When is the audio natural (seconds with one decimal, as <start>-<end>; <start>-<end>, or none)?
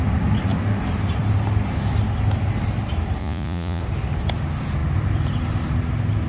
0.0-3.2; 3.8-6.3